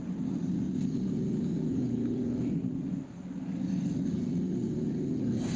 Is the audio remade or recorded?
recorded